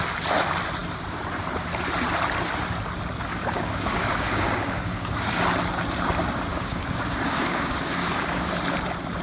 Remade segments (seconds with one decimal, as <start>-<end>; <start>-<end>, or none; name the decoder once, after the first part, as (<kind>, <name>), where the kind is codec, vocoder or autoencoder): 3.3-5.3 (codec, DAC); 6.5-8.5